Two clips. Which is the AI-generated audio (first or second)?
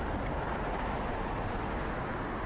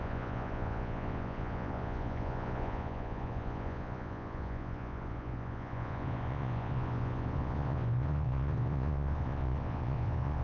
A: second